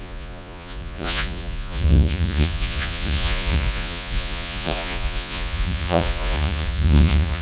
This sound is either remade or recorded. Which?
remade